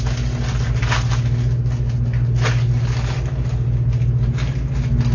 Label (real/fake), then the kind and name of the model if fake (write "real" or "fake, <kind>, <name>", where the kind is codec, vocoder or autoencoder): real